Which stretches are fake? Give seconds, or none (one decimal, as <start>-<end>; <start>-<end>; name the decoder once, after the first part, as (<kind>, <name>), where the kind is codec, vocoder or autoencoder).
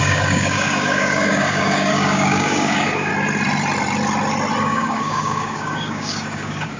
0.0-3.1 (codec, DAC); 4.6-6.8